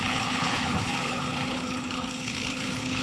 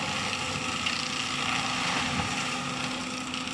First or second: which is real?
second